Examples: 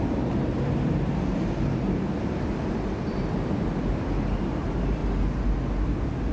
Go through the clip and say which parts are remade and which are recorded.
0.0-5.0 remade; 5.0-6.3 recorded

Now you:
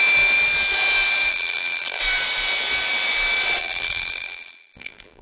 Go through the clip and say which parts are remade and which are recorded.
0.0-1.3 recorded; 1.3-2.0 remade; 2.0-3.6 recorded; 3.6-5.2 remade

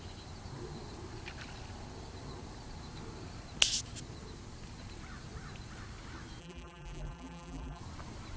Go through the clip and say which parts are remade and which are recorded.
0.0-6.4 recorded; 6.4-7.8 remade; 7.8-8.4 recorded

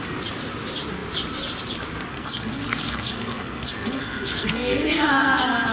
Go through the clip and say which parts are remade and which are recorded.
0.0-2.1 recorded; 2.1-5.7 remade

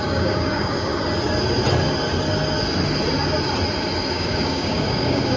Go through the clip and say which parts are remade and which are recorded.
0.0-0.9 remade; 0.9-4.1 recorded; 4.1-5.4 remade

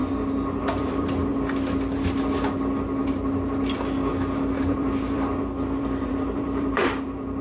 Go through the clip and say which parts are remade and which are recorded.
0.0-0.6 recorded; 0.6-1.3 remade; 1.3-4.7 recorded; 4.7-7.4 remade